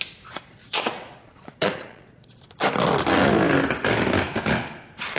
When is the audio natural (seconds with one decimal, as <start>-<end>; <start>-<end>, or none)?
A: 0.0-0.6; 2.4-5.2